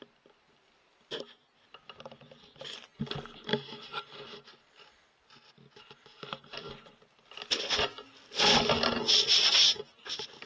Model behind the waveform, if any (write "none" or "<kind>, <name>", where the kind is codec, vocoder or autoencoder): none